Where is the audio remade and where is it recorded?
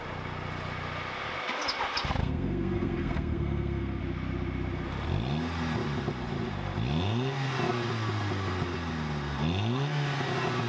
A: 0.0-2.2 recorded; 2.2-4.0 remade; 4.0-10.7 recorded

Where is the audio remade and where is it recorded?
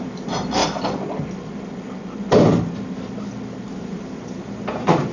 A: 0.0-0.6 remade; 0.6-3.7 recorded; 3.7-5.1 remade